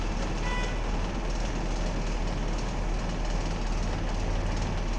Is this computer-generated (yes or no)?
no